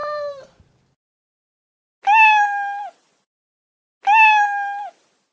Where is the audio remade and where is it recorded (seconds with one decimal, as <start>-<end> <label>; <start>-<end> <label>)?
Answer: 0.0-0.8 remade; 0.8-5.3 recorded